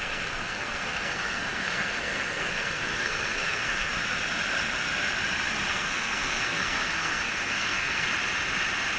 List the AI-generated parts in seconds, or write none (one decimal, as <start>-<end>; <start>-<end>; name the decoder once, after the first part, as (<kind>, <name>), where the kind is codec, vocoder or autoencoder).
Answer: 0.0-3.9 (codec, SNAC); 5.7-8.1